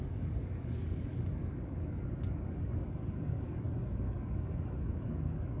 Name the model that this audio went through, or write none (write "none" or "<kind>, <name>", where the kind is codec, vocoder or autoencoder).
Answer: codec, DAC